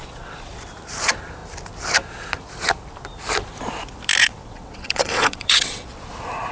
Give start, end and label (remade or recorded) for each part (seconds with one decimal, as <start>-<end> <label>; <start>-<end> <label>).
0.0-0.5 remade; 0.5-4.2 recorded; 4.2-6.1 remade; 6.1-6.5 recorded